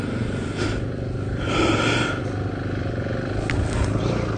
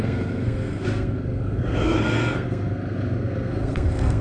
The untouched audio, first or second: first